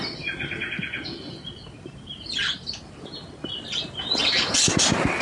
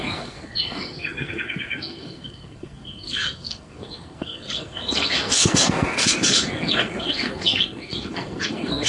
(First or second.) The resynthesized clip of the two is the second